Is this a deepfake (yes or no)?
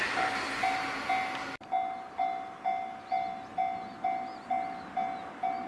no